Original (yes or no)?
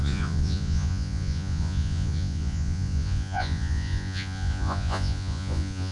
no